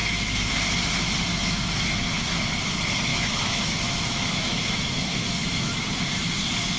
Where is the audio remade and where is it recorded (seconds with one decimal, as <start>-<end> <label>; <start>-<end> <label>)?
0.0-0.5 remade; 0.5-1.3 recorded; 1.3-2.1 remade; 2.1-3.1 recorded; 3.1-5.8 remade; 5.8-6.8 recorded